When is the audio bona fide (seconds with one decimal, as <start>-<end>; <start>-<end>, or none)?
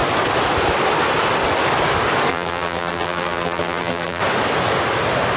0.0-2.3; 4.2-5.4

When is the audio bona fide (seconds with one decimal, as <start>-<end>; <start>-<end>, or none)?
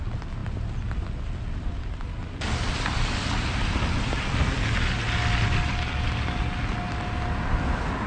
0.0-8.1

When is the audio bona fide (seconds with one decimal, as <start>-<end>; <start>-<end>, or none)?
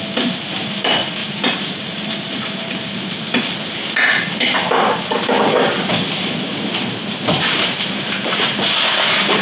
0.0-1.2; 3.2-6.5; 8.4-9.4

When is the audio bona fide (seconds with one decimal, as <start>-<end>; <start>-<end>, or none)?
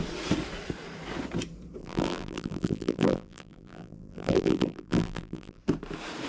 0.0-1.8; 5.6-6.3